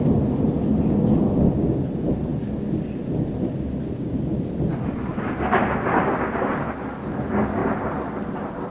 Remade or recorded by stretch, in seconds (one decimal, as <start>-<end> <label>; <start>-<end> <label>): 0.0-7.6 recorded; 7.6-8.7 remade